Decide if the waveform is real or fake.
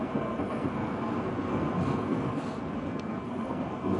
fake